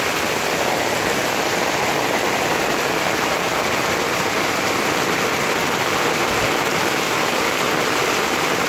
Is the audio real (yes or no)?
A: yes